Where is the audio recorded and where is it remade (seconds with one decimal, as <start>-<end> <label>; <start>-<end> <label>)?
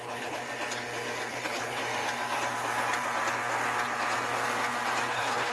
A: 0.0-0.4 remade; 0.4-1.3 recorded; 1.3-1.8 remade; 1.8-5.1 recorded; 5.1-5.5 remade